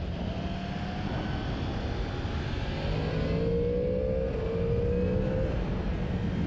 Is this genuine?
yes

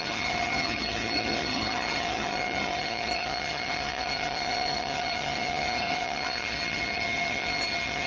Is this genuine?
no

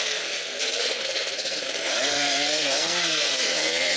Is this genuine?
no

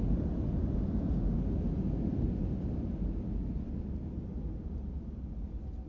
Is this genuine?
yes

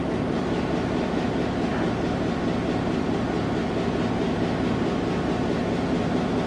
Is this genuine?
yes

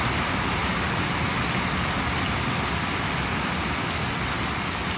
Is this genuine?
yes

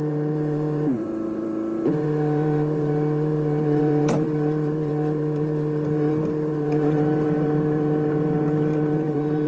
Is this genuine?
no